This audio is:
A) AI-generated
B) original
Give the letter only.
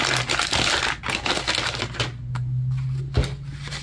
B